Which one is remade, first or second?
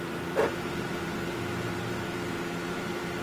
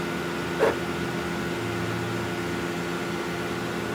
first